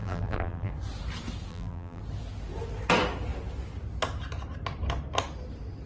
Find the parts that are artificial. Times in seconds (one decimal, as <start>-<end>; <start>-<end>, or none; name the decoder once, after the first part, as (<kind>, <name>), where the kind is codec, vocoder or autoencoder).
0.0-0.7 (vocoder, BigVGAN v2); 1.5-2.0